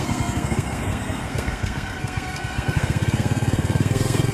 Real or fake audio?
fake